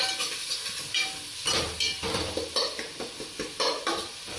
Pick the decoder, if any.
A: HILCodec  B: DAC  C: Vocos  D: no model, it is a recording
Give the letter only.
D